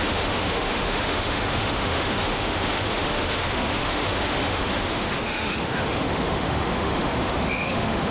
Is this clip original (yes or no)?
no